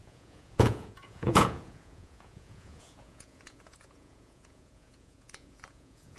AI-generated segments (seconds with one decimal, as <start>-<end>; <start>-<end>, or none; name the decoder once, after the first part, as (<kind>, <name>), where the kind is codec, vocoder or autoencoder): 0.0-6.2 (vocoder, Vocos)